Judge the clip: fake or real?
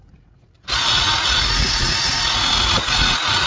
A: fake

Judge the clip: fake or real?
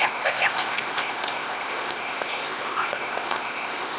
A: fake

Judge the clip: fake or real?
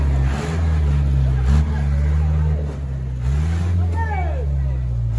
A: real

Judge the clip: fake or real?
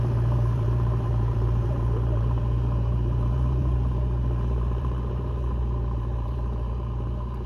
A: fake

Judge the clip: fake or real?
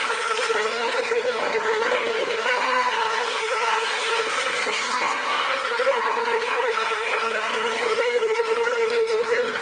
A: fake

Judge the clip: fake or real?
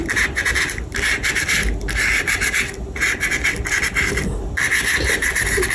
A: real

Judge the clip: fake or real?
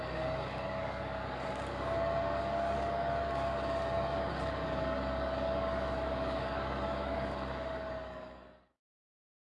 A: fake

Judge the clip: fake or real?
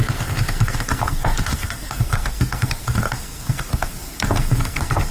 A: fake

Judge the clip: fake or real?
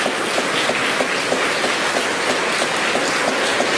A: real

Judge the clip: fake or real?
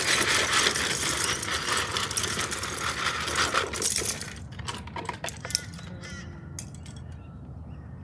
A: real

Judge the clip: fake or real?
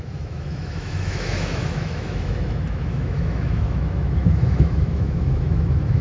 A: fake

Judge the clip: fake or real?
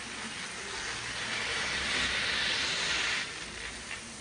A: real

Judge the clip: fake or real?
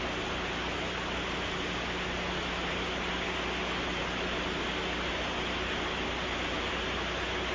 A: real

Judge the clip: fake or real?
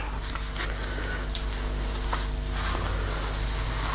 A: real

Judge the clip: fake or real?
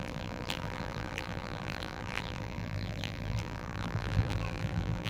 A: fake